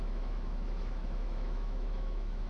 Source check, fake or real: fake